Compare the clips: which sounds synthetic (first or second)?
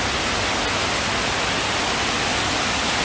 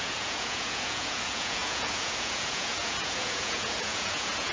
second